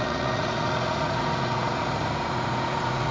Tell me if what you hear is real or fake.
fake